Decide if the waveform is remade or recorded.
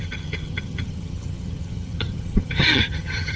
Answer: remade